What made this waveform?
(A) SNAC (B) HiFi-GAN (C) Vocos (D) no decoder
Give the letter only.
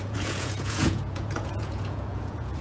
C